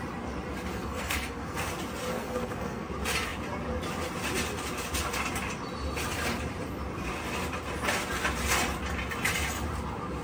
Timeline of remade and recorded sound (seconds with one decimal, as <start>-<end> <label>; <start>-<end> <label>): 0.0-0.7 recorded; 0.7-1.7 remade; 1.7-2.1 recorded; 2.1-2.9 remade; 2.9-10.2 recorded

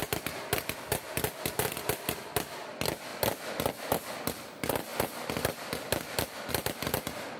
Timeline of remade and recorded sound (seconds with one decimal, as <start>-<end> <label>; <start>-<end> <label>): 0.0-7.4 recorded

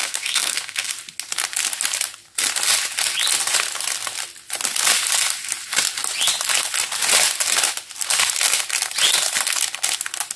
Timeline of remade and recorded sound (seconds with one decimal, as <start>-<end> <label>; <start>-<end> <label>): 0.0-0.9 remade; 0.9-10.4 recorded

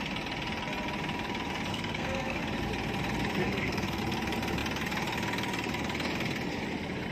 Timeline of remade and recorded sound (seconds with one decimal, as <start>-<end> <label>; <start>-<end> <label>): 0.0-1.7 recorded; 1.7-2.4 remade; 2.4-3.4 recorded; 3.4-4.0 remade; 4.0-7.1 recorded

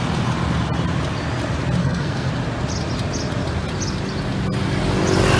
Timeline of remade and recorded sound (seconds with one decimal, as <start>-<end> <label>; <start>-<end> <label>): 0.0-1.8 recorded; 1.8-2.3 remade; 2.3-5.4 recorded

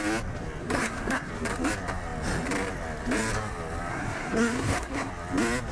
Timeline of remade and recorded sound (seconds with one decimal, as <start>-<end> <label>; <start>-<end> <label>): 0.0-0.6 recorded; 0.6-1.3 remade; 1.3-3.9 recorded; 3.9-5.1 remade; 5.1-5.7 recorded